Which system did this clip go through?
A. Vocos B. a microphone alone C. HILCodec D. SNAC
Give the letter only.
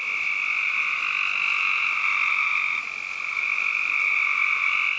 B